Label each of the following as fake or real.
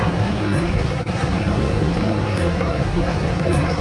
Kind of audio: fake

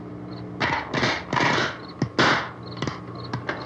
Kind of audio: real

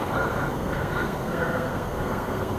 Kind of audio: fake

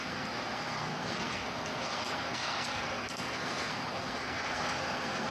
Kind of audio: fake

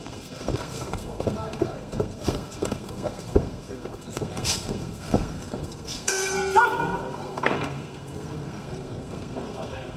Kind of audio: fake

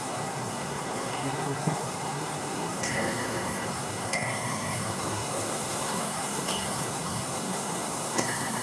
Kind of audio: fake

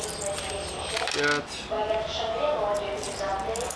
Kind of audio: real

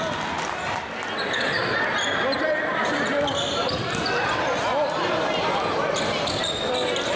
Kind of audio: real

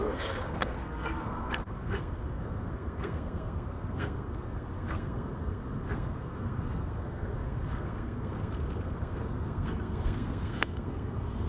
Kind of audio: fake